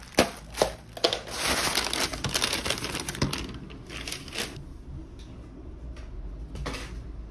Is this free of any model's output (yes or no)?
yes